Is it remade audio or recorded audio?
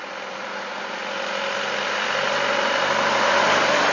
recorded